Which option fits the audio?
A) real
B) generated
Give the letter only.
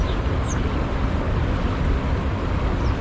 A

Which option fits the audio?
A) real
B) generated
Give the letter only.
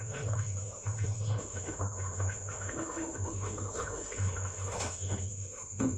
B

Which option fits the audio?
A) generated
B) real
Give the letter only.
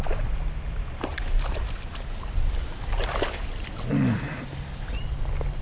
B